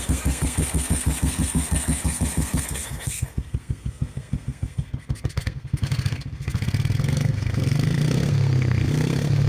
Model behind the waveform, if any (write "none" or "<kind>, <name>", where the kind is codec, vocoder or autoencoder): codec, SNAC